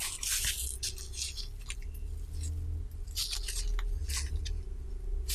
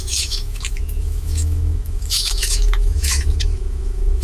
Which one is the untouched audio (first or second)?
first